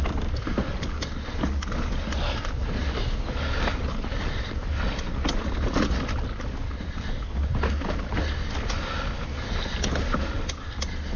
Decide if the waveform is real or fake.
real